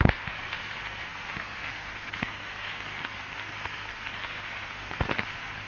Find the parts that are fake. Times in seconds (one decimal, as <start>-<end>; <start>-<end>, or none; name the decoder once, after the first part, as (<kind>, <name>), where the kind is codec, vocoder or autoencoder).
0.0-5.7 (codec, SNAC)